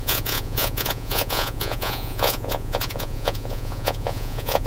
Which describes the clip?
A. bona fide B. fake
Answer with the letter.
B